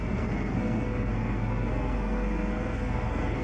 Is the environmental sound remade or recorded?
remade